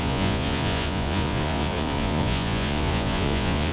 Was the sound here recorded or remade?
remade